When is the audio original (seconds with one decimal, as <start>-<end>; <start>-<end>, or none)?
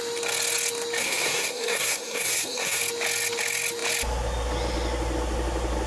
0.0-1.0; 2.8-5.9